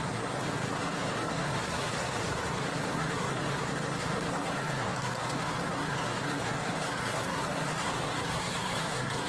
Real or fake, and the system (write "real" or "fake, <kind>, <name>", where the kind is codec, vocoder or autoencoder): fake, codec, SNAC